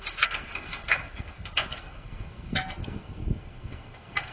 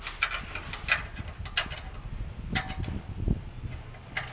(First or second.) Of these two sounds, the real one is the second